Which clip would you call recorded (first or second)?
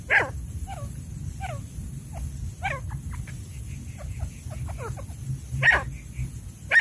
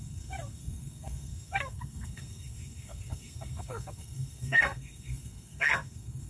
first